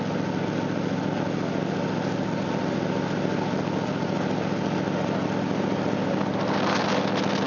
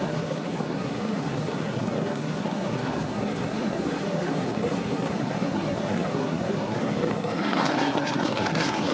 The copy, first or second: second